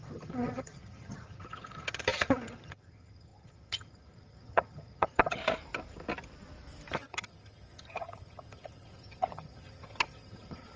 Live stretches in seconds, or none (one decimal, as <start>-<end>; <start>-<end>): 5.4-6.9